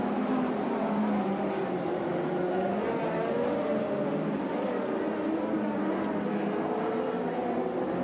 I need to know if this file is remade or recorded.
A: recorded